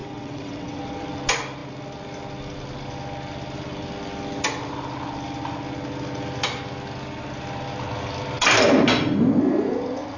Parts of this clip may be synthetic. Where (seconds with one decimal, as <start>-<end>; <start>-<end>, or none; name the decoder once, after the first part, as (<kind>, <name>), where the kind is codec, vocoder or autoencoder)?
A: 0.0-0.8 (vocoder, WaveNeXt)